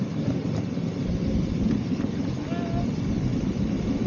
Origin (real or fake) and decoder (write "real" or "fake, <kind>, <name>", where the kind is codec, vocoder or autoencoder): real